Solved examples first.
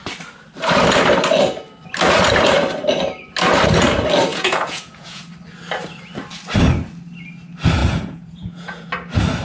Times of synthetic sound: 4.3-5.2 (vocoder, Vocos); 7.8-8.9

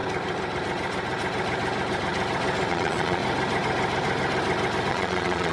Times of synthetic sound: 2.7-3.2 (vocoder, Vocos); 4.9-5.5

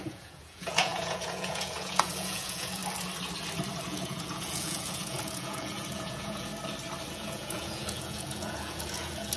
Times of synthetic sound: 0.0-2.8 (vocoder, Vocos); 3.9-6.5; 7.1-9.4

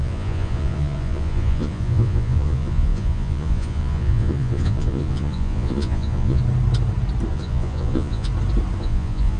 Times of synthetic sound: 0.0-6.4 (vocoder, Vocos); 7.3-8.3; 8.8-9.4

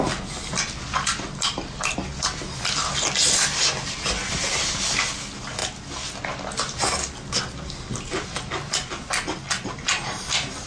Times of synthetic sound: none